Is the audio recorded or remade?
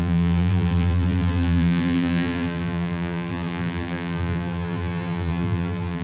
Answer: remade